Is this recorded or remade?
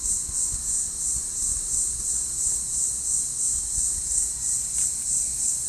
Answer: recorded